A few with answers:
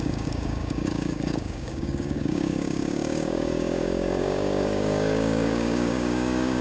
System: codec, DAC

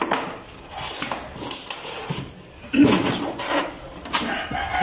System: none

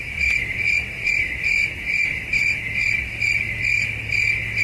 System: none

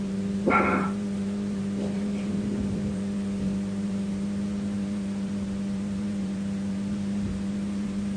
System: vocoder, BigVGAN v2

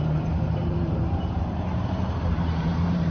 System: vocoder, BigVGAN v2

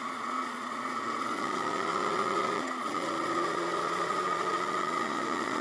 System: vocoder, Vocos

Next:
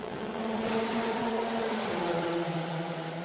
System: vocoder, WaveNeXt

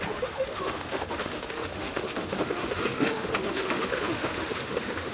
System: autoencoder, DAC-VAE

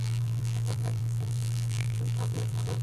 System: vocoder, BigVGAN v2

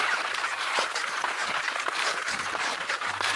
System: vocoder, BigVGAN v2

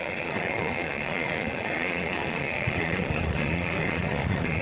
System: vocoder, Vocos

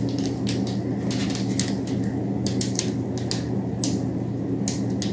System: none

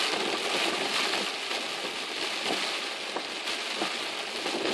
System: none